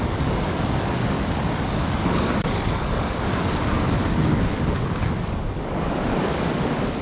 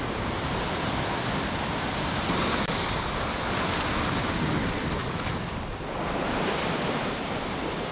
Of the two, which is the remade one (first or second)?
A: first